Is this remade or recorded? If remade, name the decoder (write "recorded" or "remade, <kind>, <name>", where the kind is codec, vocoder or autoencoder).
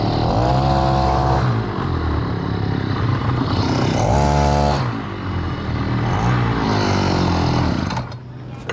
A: recorded